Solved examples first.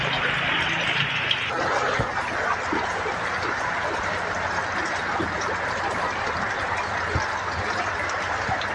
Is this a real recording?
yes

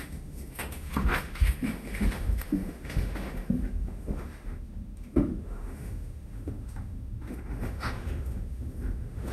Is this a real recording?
no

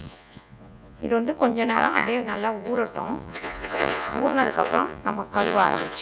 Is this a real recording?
no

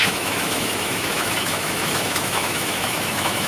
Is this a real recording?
no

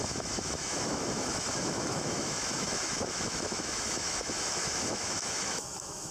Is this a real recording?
no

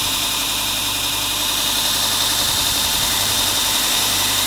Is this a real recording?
no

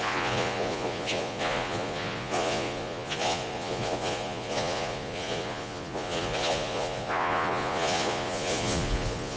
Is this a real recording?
no